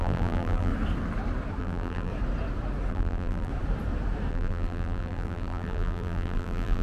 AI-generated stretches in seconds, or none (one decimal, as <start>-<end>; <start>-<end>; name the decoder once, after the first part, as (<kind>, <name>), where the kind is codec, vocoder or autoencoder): 0.0-0.7 (vocoder, BigVGAN v2); 1.6-2.1; 2.9-3.5; 4.3-6.8